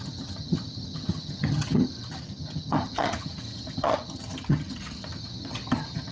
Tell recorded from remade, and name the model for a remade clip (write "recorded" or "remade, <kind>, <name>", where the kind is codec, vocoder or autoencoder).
remade, vocoder, HiFi-GAN